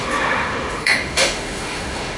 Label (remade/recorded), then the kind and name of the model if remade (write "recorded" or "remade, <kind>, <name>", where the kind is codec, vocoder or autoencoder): remade, autoencoder, DAC-VAE